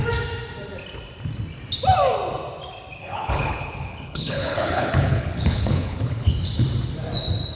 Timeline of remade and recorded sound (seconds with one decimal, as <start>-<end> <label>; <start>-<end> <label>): 0.0-3.0 recorded; 3.0-6.4 remade; 6.4-7.6 recorded